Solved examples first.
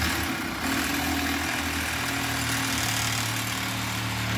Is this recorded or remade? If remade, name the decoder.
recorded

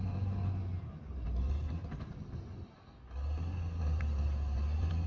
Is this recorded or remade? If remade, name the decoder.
recorded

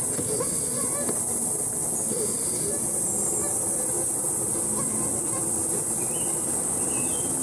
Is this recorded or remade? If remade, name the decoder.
recorded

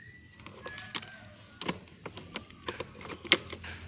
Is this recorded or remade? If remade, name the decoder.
recorded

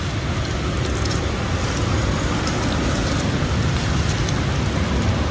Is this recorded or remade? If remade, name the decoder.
recorded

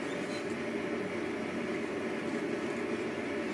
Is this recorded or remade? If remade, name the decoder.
recorded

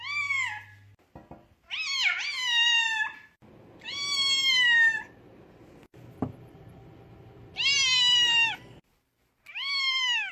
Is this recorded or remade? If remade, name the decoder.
recorded